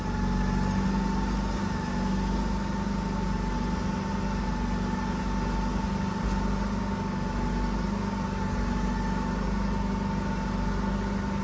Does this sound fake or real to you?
real